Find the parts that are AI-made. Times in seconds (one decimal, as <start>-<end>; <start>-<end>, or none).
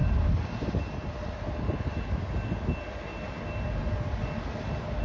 0.0-1.1